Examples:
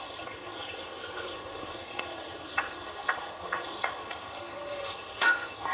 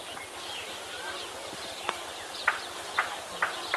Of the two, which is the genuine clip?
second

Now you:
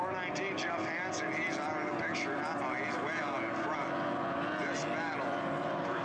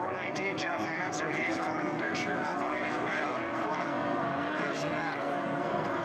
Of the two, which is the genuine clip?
first